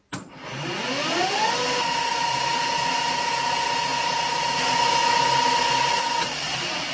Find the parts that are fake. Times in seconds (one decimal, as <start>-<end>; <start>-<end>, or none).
2.1-2.7; 3.9-4.5